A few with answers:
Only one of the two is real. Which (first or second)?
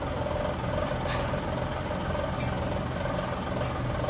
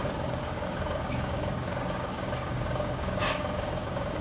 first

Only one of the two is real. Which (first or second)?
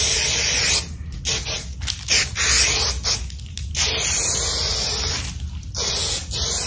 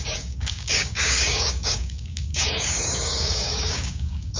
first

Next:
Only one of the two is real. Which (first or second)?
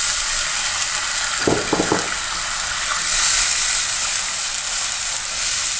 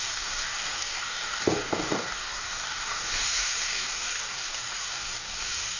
first